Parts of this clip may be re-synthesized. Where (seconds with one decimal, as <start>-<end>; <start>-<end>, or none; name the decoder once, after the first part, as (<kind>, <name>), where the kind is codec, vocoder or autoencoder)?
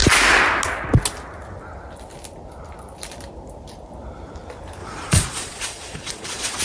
4.8-6.6 (vocoder, Vocos)